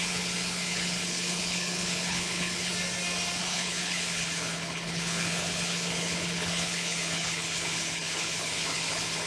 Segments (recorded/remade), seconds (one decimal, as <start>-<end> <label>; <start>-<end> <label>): 0.0-2.7 remade; 2.7-3.4 recorded; 3.4-9.3 remade